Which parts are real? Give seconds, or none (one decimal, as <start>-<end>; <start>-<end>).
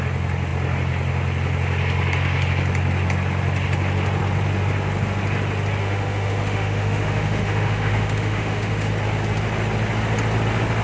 0.0-5.8; 8.9-10.8